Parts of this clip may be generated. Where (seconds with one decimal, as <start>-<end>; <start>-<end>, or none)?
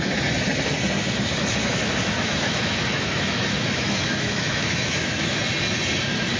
1.6-5.4